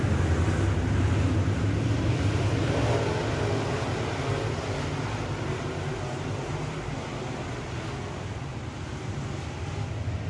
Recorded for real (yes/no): yes